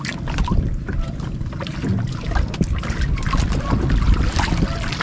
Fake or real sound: real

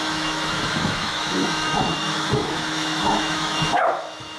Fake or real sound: fake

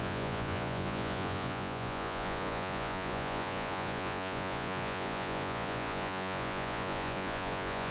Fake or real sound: fake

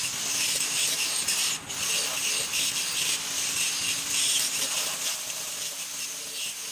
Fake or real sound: real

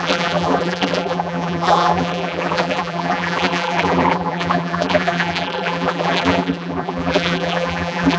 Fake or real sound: fake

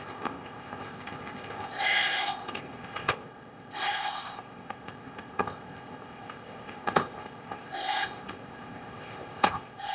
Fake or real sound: fake